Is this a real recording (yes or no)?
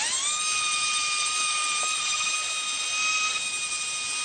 yes